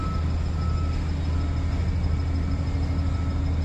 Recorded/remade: recorded